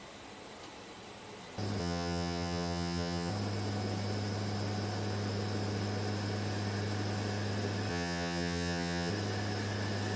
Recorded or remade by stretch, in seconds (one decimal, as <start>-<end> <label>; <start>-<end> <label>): 0.0-1.8 recorded; 1.8-3.3 remade; 3.3-7.9 recorded; 7.9-9.1 remade; 9.1-10.2 recorded

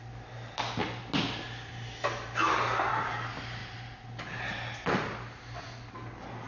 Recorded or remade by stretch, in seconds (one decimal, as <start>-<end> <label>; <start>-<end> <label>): 0.0-6.5 recorded

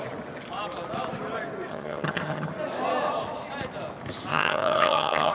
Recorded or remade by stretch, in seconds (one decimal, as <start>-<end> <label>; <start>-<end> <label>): 0.0-1.7 recorded; 1.7-2.5 remade; 2.5-4.3 recorded; 4.3-5.3 remade

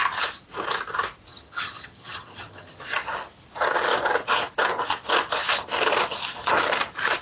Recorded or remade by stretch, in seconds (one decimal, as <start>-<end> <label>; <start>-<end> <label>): 0.0-1.3 recorded; 1.3-2.8 remade; 2.8-7.2 recorded